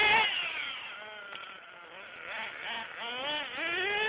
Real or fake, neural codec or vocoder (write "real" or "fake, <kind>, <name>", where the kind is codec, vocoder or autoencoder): real